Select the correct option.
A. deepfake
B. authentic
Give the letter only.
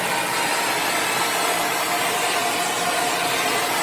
B